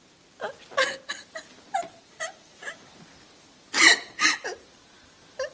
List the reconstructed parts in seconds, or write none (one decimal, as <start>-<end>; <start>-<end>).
1.7-2.7